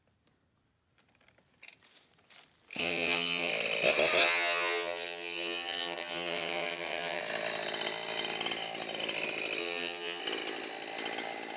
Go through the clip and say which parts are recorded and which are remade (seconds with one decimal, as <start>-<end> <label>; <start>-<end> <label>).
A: 0.0-2.8 recorded; 2.8-3.5 remade; 3.5-4.2 recorded; 4.2-7.2 remade; 7.2-9.6 recorded; 9.6-10.2 remade; 10.2-11.6 recorded